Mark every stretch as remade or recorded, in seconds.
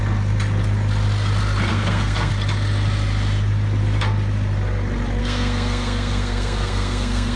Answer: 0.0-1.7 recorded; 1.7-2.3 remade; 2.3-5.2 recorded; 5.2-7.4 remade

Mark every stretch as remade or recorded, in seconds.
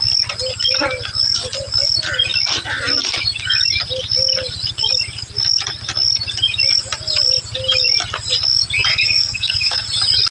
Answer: 0.0-8.9 recorded; 8.9-9.8 remade; 9.8-10.3 recorded